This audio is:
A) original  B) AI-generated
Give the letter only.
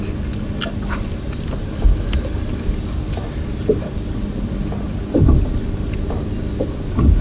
A